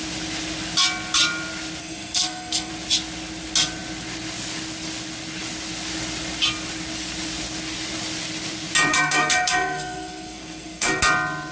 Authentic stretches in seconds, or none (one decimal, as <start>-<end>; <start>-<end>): 0.0-1.8; 2.7-8.9; 11.0-11.5